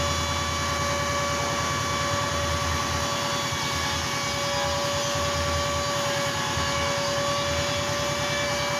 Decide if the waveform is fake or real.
real